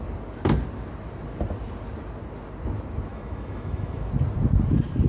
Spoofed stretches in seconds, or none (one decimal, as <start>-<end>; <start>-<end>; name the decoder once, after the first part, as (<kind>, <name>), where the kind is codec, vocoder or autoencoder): 3.1-4.1 (autoencoder, DAC-VAE)